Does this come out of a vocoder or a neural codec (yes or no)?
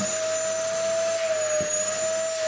no